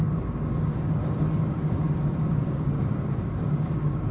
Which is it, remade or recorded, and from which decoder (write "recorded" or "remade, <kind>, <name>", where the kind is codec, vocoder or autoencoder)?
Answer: remade, codec, DAC